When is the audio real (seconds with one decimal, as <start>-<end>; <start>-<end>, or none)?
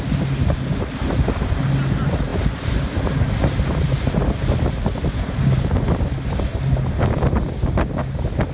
0.0-8.5